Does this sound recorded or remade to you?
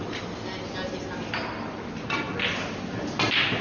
recorded